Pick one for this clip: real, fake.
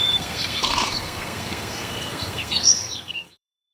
fake